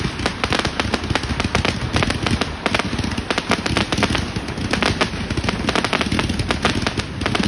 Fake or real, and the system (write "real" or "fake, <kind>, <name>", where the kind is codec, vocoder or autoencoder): real